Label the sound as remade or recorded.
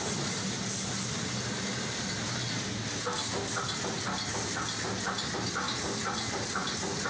recorded